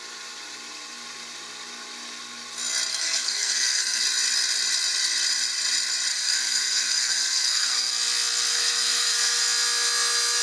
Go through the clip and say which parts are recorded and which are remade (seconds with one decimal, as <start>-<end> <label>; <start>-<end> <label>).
0.0-2.9 recorded; 2.9-4.0 remade; 4.0-6.1 recorded; 6.1-7.9 remade; 7.9-8.5 recorded; 8.5-9.4 remade; 9.4-10.4 recorded